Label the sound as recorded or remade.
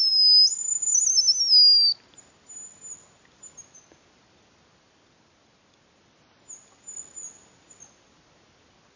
recorded